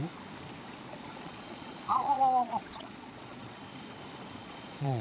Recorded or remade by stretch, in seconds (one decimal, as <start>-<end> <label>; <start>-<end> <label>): 0.0-1.1 recorded; 1.1-3.6 remade; 3.6-4.4 recorded; 4.4-5.0 remade